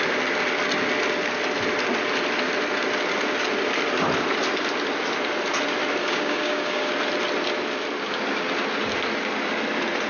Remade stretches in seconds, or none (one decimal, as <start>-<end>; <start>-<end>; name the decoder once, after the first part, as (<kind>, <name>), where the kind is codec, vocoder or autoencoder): 6.0-6.9 (codec, DAC)